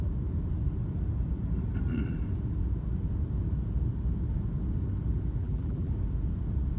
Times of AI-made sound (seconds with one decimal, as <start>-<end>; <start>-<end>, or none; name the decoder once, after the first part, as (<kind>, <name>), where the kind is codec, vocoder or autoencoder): 5.4-5.9 (vocoder, BigVGAN v2)